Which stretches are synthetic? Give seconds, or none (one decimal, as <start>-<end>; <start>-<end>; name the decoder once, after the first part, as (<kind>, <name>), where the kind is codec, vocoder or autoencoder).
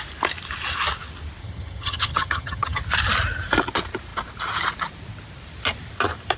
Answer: 1.4-2.8 (vocoder, HiFi-GAN)